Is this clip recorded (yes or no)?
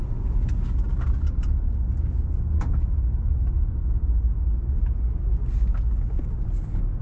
yes